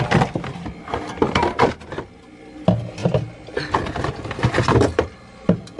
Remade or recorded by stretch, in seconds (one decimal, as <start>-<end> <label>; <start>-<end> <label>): 0.0-5.8 recorded